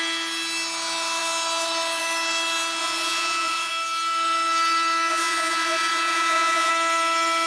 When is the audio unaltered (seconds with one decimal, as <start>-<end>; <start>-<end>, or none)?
0.0-2.8; 3.7-5.1; 6.7-7.5